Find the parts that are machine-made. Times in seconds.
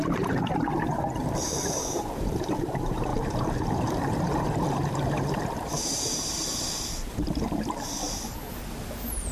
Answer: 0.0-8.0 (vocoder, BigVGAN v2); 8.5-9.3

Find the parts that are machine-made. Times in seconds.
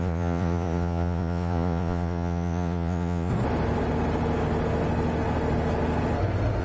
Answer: 0.0-3.3 (vocoder, Vocos)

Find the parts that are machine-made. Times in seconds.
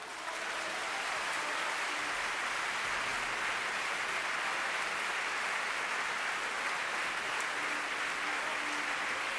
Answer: none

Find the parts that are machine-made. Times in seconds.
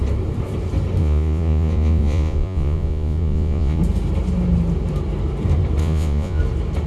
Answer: 1.0-3.8 (vocoder, Vocos); 5.8-6.4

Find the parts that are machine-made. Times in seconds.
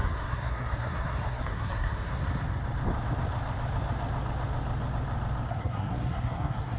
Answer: 0.0-2.2 (codec, SNAC); 5.5-6.8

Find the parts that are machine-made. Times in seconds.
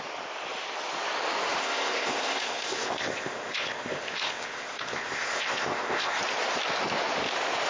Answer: 1.6-6.2 (codec, ZipCodec)